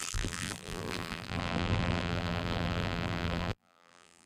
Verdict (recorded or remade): remade